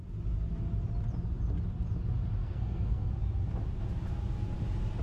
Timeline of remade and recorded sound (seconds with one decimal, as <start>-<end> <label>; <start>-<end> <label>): 0.0-2.4 recorded; 2.4-3.1 remade; 3.1-5.0 recorded